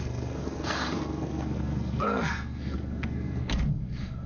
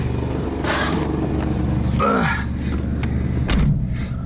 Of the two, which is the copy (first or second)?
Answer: first